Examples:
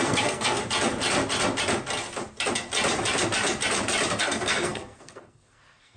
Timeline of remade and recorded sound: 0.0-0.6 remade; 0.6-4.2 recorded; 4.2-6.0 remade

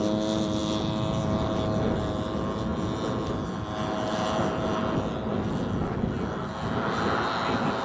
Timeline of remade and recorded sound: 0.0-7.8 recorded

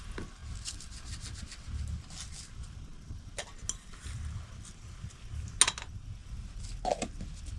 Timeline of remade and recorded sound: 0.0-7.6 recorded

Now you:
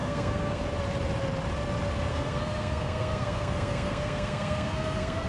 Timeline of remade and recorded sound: 0.0-0.6 remade; 0.6-2.1 recorded; 2.1-5.3 remade